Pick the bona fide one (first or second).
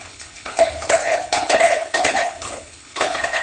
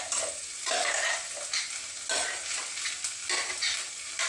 second